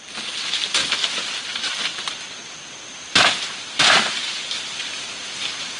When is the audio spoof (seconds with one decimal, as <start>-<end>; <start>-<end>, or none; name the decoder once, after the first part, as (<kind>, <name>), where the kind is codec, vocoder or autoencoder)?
0.0-1.9 (vocoder, BigVGAN v2); 3.3-5.8